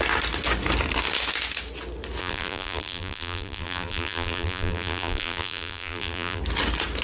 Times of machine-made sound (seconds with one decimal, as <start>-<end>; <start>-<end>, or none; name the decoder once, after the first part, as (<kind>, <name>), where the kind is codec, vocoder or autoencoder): 2.2-6.4 (vocoder, BigVGAN v2)